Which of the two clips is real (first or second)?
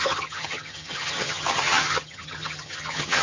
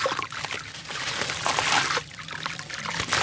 second